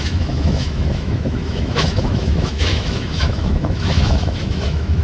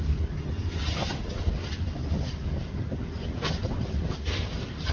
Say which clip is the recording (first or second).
second